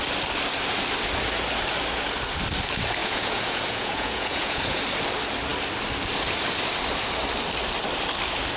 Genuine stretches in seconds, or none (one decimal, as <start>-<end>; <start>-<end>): 0.0-3.0; 4.8-8.6